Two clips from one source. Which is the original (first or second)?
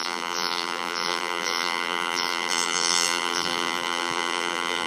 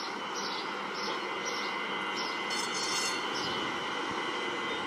second